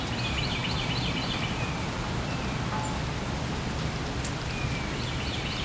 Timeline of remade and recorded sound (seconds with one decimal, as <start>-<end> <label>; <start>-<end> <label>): 0.0-5.6 recorded